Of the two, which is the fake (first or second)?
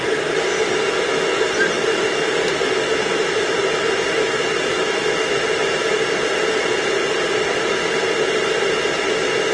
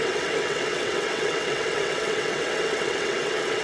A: second